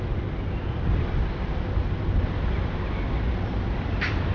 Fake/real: real